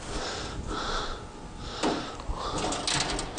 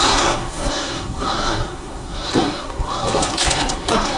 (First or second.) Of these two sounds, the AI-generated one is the second